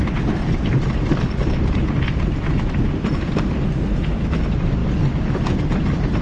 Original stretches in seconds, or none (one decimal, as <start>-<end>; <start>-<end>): 0.4-4.1; 4.8-5.3